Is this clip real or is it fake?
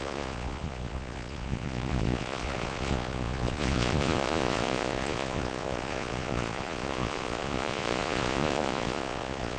fake